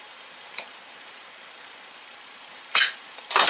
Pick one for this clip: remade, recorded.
remade